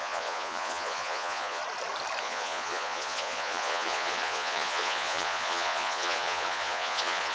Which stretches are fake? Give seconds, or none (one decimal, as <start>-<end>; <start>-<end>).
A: 0.0-1.6; 2.2-7.3